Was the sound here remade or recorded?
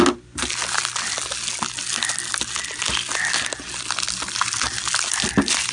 recorded